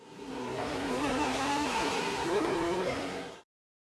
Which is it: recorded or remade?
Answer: remade